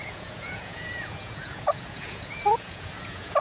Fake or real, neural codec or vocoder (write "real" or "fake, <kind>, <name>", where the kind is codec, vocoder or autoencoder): fake, vocoder, Vocos